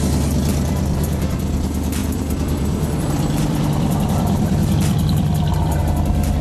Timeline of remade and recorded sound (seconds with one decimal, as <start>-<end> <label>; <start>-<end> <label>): 0.0-0.5 recorded; 0.5-1.4 remade; 1.4-2.0 recorded; 2.0-5.8 remade; 5.8-6.4 recorded